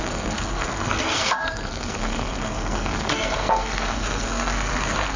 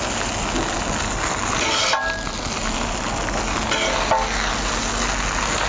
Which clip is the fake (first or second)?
first